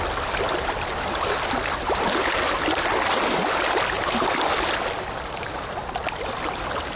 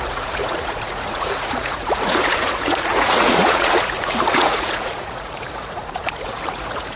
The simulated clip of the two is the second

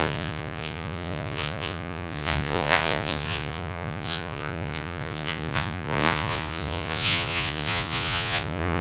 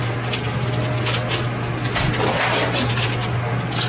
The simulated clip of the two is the first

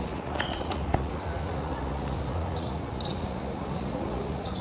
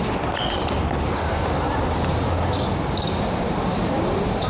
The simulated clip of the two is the first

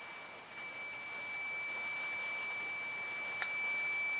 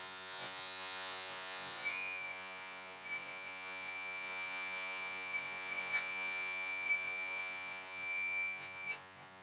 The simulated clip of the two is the second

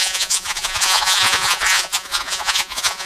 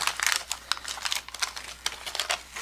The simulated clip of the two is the first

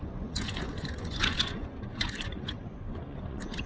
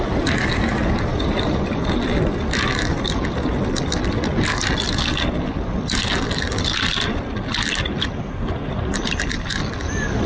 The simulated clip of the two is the first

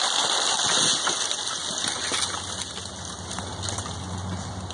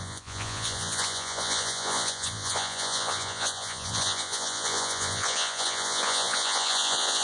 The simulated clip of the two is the second